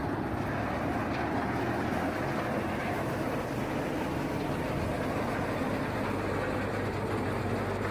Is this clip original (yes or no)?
yes